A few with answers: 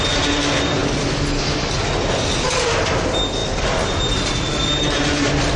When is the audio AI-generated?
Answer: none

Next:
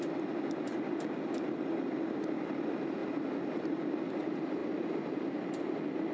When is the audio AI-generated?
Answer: 0.0-3.0 (vocoder, BigVGAN v2); 4.0-4.6; 5.1-6.1